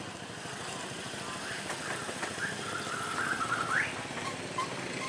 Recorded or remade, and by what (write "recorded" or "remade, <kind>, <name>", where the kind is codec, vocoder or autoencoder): recorded